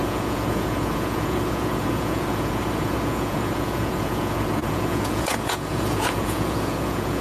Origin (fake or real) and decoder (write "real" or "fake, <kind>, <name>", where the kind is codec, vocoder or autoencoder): fake, vocoder, Vocos